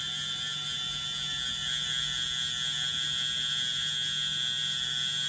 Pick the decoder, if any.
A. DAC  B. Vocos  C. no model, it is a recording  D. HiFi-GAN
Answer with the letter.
C